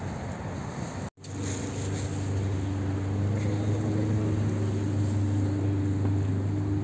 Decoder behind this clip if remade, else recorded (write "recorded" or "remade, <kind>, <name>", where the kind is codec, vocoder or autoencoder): recorded